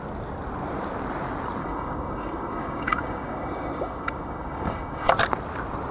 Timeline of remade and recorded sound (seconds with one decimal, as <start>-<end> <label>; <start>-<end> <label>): 0.0-1.6 recorded; 1.6-5.1 remade; 5.1-5.9 recorded